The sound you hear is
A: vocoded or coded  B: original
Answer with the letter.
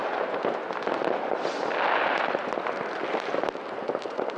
B